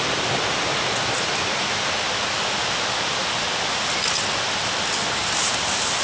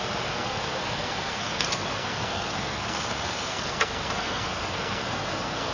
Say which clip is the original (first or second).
first